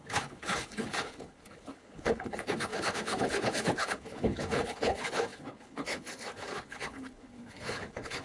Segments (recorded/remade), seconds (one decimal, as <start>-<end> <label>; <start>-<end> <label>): 0.0-8.2 remade